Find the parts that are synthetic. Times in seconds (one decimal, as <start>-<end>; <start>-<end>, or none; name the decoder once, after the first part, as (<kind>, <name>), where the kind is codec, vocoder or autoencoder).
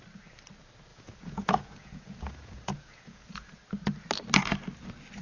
0.9-3.6 (vocoder, Vocos)